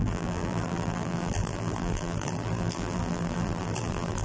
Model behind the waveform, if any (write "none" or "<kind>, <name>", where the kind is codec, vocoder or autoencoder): vocoder, BigVGAN v2